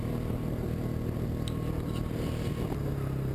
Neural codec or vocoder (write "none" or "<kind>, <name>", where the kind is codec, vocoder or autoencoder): none